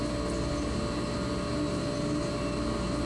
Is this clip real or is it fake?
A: real